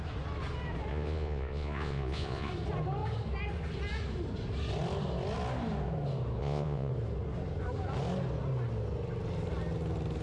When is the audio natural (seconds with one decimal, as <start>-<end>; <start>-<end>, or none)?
0.0-0.9; 2.5-6.4; 6.9-10.2